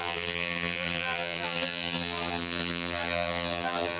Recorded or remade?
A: remade